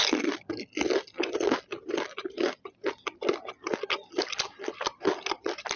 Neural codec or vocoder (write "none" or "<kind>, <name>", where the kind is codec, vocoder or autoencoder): none